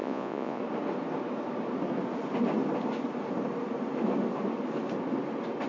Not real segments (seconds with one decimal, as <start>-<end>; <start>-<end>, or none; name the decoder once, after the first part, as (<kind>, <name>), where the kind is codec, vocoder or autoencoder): 0.0-0.6 (vocoder, Vocos)